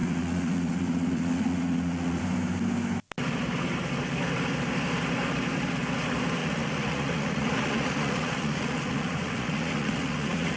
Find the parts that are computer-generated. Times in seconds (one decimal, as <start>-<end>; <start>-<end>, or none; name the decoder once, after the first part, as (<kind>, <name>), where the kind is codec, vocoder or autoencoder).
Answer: 0.0-2.2 (vocoder, Vocos); 6.4-10.6